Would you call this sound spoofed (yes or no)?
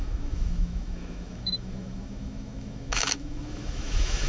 yes